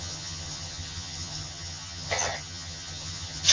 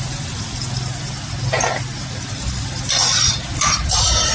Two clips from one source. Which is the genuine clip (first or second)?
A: second